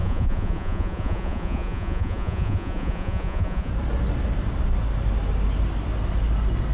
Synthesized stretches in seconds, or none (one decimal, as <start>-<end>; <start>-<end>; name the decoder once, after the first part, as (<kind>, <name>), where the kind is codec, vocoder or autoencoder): 0.0-3.7 (vocoder, Vocos)